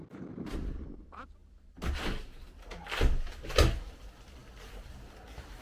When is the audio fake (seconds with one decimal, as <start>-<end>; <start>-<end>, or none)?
none